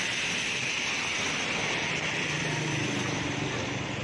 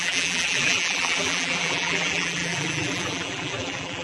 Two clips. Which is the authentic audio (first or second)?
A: first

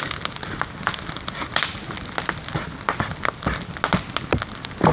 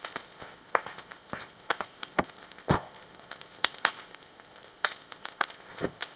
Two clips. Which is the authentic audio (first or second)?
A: first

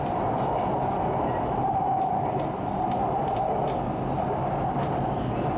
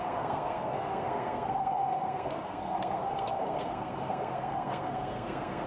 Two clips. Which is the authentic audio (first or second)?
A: first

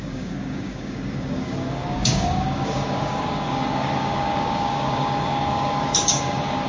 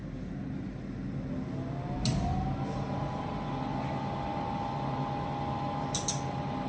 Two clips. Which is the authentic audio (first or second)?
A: second